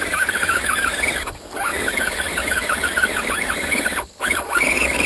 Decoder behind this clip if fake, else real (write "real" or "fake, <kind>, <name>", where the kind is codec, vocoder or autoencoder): fake, codec, DAC